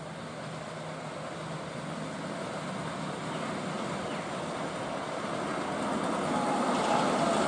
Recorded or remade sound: recorded